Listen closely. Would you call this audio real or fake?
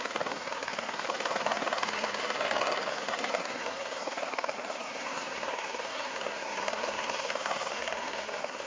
fake